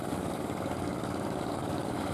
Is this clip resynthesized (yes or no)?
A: yes